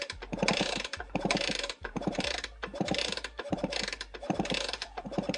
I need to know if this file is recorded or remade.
remade